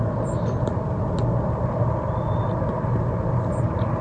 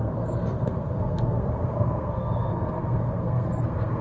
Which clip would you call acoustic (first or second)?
first